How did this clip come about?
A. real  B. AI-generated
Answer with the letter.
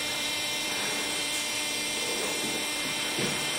B